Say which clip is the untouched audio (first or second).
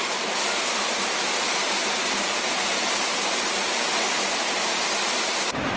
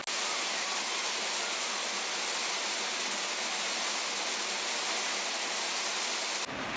second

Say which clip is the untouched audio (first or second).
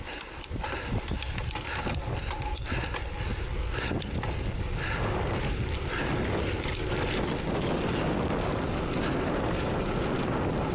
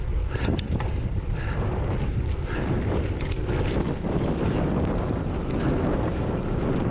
first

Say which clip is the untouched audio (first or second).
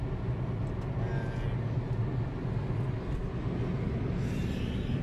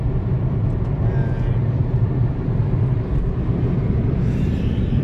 first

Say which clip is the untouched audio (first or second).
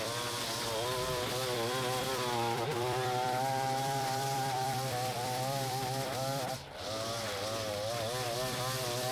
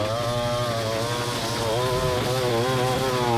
second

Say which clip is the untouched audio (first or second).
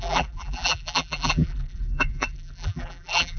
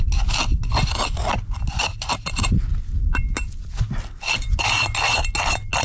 second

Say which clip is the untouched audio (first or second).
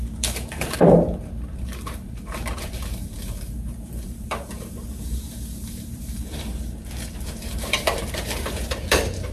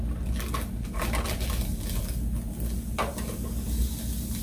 second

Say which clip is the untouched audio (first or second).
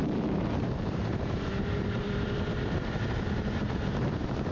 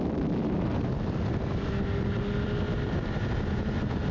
second